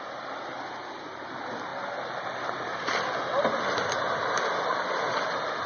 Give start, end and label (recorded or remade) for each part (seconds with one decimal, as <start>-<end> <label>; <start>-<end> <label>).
0.0-5.7 recorded

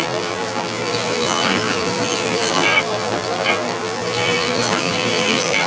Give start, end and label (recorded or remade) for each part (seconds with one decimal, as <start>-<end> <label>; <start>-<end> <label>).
0.0-5.7 remade

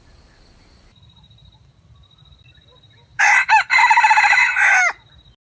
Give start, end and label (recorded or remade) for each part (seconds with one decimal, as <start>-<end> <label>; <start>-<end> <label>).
0.0-2.7 recorded; 2.7-3.3 remade; 3.3-5.6 recorded

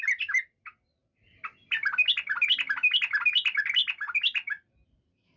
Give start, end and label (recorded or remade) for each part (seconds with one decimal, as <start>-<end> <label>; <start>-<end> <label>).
0.0-5.4 recorded

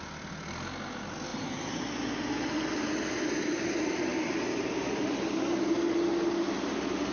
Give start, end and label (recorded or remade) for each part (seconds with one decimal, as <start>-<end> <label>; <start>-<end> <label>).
0.0-1.3 recorded; 1.3-1.8 remade; 1.8-4.1 recorded; 4.1-4.7 remade; 4.7-7.1 recorded

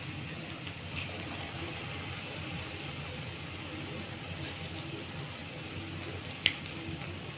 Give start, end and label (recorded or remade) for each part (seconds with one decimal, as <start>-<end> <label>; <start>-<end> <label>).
0.0-7.4 recorded